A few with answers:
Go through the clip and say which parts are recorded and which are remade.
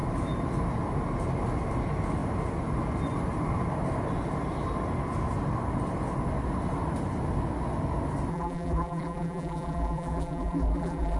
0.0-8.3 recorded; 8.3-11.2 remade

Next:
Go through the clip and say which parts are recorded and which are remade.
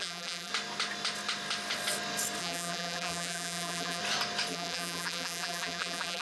0.0-0.5 remade; 0.5-2.4 recorded; 2.4-4.0 remade; 4.0-4.5 recorded; 4.5-6.2 remade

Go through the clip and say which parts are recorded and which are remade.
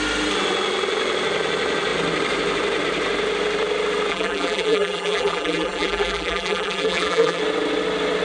0.0-4.1 recorded; 4.1-7.4 remade; 7.4-8.2 recorded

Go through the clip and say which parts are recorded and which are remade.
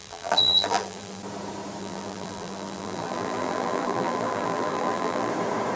0.0-1.2 remade; 1.2-1.8 recorded; 1.8-5.3 remade; 5.3-5.8 recorded